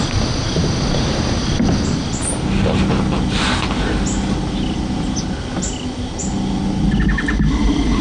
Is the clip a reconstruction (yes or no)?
no